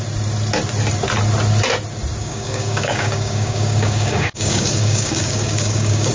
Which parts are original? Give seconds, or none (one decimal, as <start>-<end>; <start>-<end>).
0.0-2.2